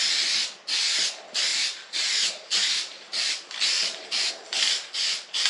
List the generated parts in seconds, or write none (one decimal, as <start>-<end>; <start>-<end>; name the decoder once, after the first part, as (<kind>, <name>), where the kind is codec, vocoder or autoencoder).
1.5-4.3 (vocoder, BigVGAN v2)